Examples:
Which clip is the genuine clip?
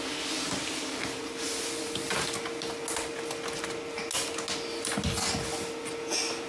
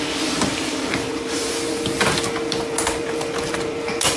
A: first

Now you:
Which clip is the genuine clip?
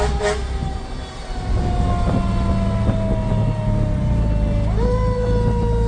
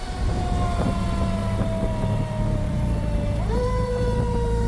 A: first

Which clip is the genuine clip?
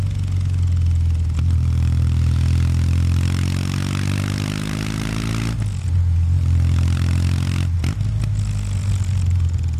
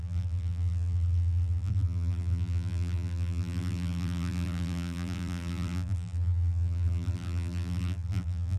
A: first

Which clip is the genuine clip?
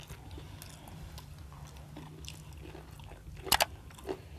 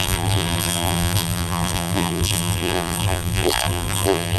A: first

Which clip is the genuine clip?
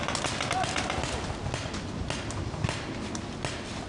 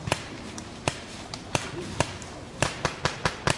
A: first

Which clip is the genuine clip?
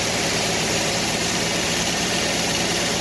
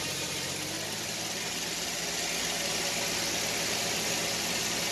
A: second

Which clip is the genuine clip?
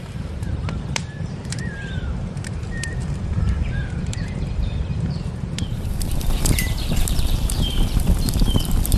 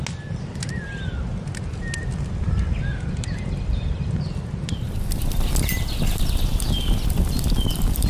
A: second